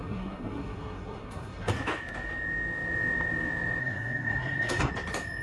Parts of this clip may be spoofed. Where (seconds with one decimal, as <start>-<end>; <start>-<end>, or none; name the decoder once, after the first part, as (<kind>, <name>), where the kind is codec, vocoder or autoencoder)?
0.0-1.7 (codec, SNAC); 3.8-4.9